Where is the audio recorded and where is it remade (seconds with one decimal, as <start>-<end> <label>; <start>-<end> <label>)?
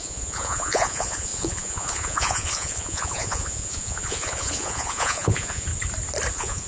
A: 0.0-5.7 remade; 5.7-6.3 recorded; 6.3-6.7 remade